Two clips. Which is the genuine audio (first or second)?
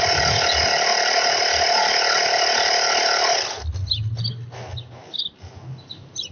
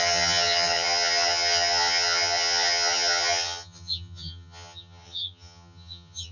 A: first